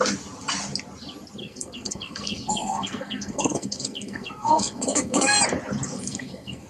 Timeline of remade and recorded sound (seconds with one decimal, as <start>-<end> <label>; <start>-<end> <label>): 0.0-1.4 recorded; 1.4-5.4 remade; 5.4-5.9 recorded; 5.9-6.7 remade